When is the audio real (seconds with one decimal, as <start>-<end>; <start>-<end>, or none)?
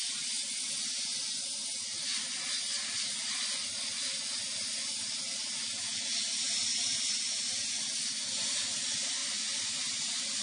0.0-10.4